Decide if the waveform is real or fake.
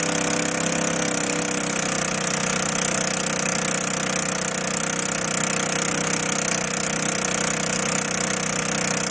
real